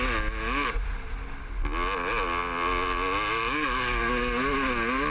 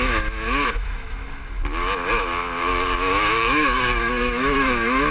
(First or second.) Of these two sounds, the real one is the first